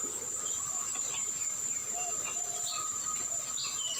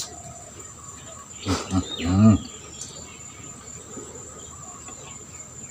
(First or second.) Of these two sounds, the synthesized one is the first